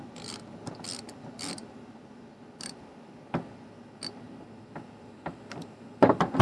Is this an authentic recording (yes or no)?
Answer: yes